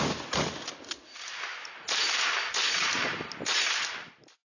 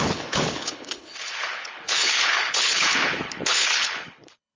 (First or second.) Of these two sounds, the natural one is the first